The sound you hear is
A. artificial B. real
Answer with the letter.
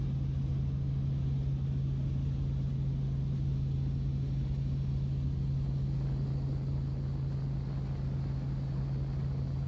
B